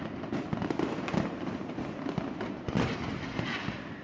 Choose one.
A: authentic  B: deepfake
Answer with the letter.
A